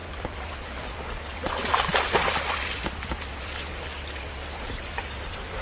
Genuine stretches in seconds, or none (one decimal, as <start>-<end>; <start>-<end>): 0.0-5.6

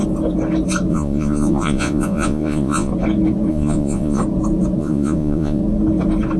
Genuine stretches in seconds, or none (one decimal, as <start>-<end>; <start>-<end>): 0.0-0.9; 2.9-3.5; 4.2-4.8; 5.6-6.4

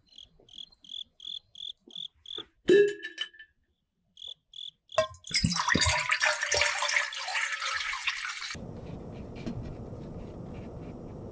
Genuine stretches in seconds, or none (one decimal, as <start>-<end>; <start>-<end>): 0.0-7.3; 8.1-11.3

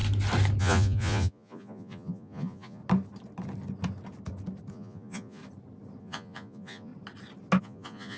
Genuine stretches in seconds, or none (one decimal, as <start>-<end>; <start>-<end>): 0.0-0.6; 2.8-4.7; 5.4-6.0; 6.9-7.6

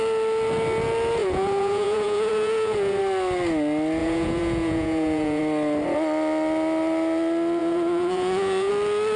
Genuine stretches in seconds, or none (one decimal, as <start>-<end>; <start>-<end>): 0.0-1.2; 3.0-4.0; 5.4-7.6; 8.7-9.2

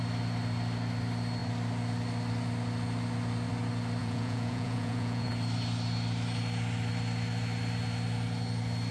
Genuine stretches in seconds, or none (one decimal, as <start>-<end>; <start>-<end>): 0.0-4.0; 5.3-8.9